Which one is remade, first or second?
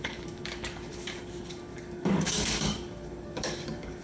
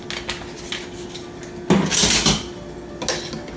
first